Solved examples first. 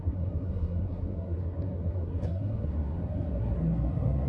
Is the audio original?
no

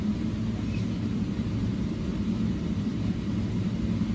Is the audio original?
no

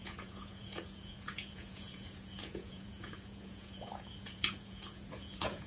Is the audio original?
no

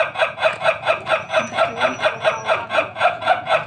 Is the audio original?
no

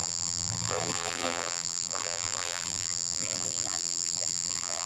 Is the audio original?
no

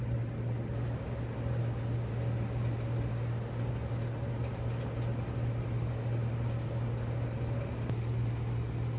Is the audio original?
yes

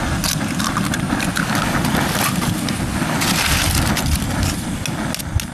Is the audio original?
yes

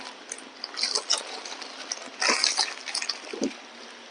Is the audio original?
yes